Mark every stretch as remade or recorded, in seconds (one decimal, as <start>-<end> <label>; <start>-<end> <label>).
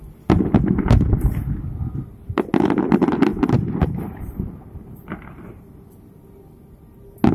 0.0-3.3 recorded; 3.3-4.8 remade; 4.8-7.3 recorded